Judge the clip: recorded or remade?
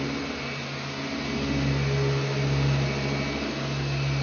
recorded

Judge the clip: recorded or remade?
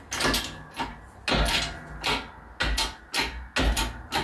recorded